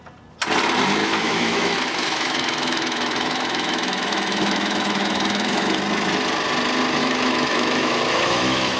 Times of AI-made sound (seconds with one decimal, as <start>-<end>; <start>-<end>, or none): 1.0-5.8; 7.0-8.8